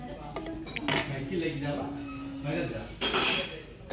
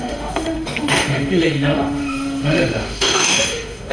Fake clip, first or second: second